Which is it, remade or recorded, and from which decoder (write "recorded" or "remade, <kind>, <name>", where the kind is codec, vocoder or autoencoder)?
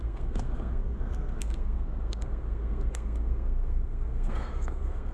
remade, codec, SNAC